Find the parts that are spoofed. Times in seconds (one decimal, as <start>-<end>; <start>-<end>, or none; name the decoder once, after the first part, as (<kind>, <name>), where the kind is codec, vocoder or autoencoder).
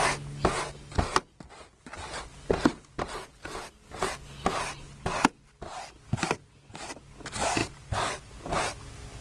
none